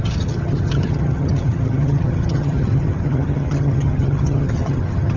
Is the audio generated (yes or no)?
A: yes